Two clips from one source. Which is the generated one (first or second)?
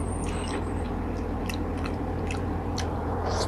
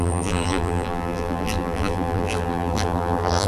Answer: second